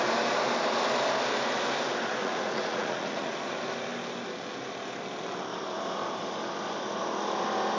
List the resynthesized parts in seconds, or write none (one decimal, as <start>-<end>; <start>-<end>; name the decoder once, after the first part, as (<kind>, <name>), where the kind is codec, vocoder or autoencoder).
2.2-3.5 (vocoder, Vocos)